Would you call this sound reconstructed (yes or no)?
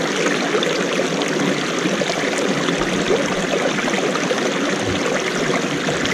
no